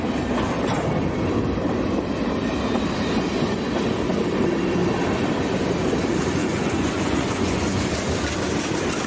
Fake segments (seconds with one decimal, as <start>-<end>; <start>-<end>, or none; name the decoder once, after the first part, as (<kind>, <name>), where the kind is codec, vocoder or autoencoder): 6.4-7.9 (vocoder, Vocos)